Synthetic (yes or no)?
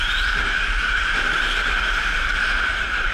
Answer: yes